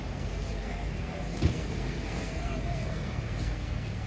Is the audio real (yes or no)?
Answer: no